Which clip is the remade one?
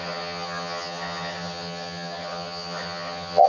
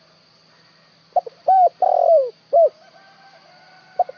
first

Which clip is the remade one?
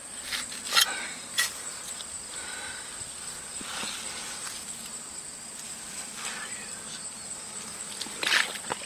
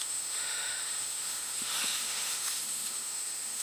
second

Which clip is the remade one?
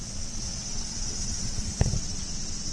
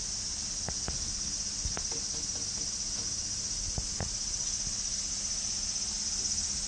first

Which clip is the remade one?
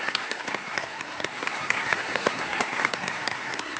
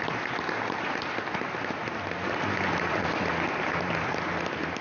first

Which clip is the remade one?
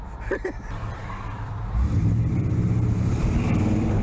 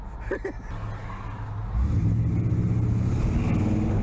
first